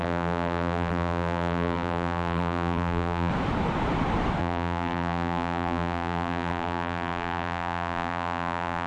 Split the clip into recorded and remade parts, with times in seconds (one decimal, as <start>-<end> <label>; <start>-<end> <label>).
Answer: 0.0-3.3 remade; 3.3-4.4 recorded; 4.4-8.9 remade